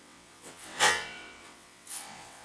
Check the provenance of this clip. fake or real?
fake